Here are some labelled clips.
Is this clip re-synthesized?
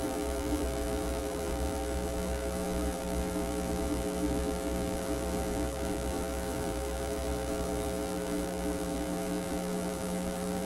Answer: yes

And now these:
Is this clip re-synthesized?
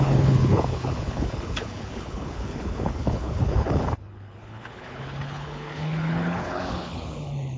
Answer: yes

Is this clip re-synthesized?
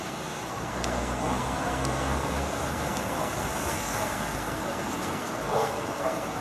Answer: yes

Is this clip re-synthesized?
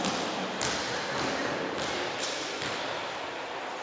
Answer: no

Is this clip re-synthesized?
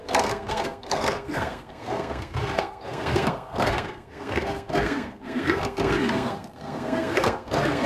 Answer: yes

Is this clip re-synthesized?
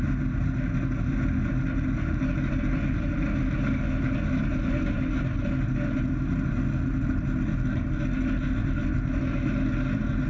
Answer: no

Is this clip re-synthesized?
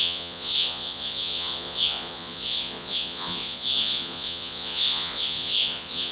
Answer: yes